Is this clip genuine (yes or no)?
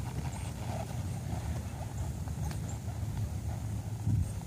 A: yes